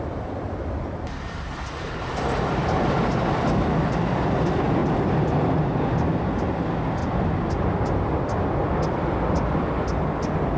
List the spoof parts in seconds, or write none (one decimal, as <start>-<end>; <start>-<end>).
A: none